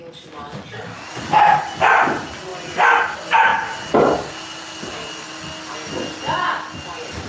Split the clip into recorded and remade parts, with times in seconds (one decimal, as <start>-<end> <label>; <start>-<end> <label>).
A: 0.0-7.3 recorded